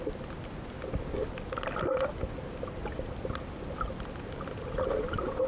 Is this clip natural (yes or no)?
yes